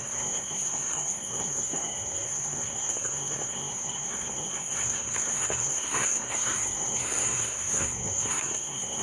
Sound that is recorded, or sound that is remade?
remade